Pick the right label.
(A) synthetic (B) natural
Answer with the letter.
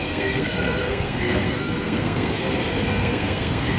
A